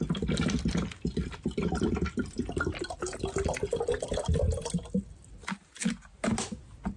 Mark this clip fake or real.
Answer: real